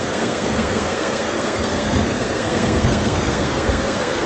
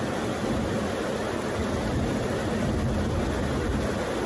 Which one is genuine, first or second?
second